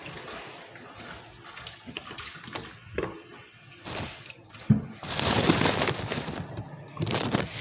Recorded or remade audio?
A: recorded